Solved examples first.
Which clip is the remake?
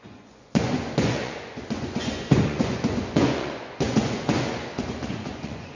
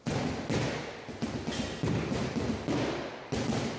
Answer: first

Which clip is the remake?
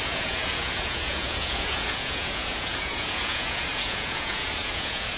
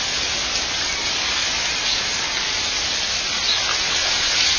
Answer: first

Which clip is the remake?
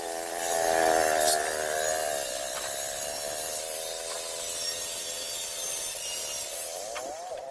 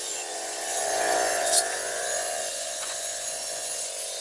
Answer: second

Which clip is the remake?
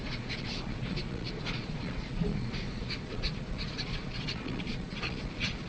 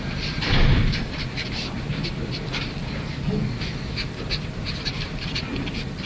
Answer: first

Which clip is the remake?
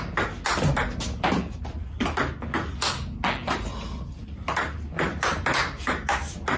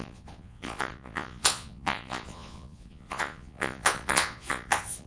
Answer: second